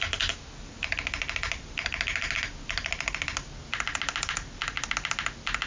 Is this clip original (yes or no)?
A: yes